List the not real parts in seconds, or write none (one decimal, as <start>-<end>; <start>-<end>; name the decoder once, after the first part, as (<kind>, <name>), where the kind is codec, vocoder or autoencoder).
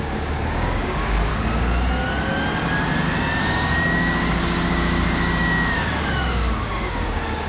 0.0-1.3 (codec, DAC); 3.4-7.5